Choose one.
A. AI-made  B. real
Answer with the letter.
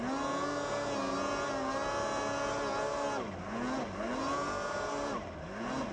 B